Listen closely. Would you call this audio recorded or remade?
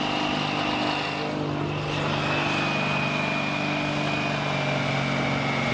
recorded